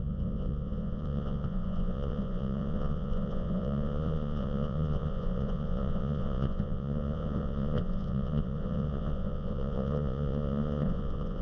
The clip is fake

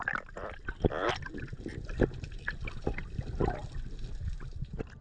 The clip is real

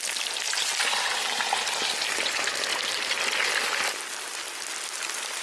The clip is real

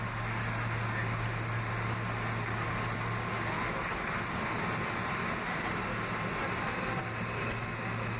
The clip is real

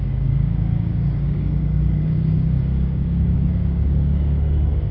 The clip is fake